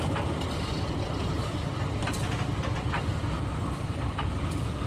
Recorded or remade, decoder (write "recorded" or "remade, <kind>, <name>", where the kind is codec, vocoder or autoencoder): remade, vocoder, BigVGAN v2